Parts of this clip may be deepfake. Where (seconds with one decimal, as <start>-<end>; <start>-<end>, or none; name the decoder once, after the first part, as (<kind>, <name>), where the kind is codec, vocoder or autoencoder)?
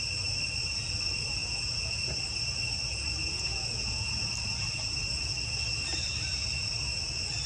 1.4-2.1 (vocoder, Vocos); 3.2-4.3